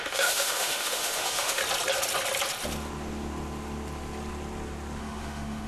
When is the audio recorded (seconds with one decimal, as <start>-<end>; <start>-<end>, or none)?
1.6-5.0